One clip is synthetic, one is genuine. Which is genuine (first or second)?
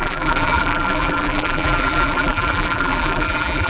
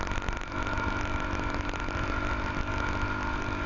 second